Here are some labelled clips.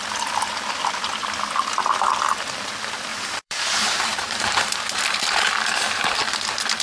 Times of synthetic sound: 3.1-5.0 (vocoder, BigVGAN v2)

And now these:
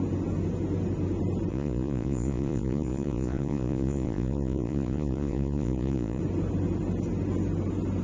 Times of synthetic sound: 1.5-6.2 (vocoder, Vocos)

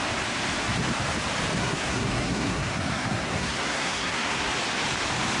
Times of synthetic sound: 1.6-4.5 (codec, SNAC)